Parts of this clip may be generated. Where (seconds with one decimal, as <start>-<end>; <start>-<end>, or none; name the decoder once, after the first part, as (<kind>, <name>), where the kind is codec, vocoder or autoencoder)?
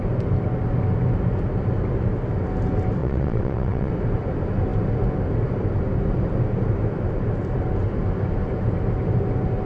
3.0-3.9 (vocoder, WaveNeXt)